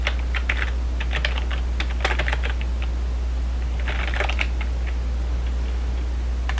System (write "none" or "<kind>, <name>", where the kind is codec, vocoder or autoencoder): none